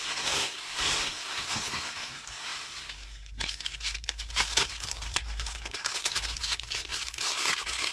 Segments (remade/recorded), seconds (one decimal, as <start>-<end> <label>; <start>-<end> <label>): 0.0-7.9 remade